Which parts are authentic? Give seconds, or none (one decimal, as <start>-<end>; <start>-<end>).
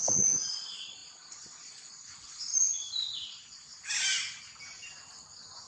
2.5-3.3; 3.7-5.7